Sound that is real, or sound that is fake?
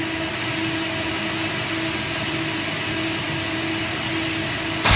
real